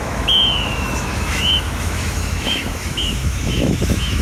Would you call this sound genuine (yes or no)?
no